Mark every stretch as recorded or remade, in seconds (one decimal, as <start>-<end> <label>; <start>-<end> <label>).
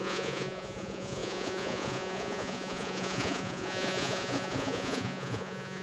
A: 0.0-5.8 remade